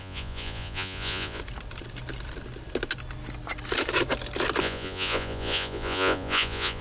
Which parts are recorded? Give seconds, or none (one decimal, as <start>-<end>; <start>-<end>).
1.4-4.6